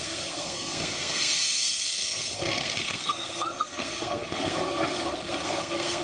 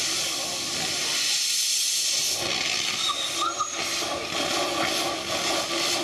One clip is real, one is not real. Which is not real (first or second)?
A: first